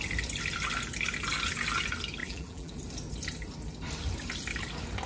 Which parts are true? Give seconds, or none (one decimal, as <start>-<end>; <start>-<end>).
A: 0.0-2.2; 2.7-5.1